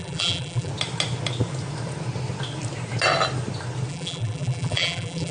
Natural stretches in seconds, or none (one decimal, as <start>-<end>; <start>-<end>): 0.7-3.9